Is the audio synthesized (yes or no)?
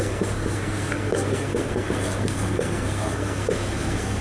yes